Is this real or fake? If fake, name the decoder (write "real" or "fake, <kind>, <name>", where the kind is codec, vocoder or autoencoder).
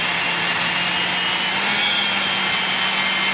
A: real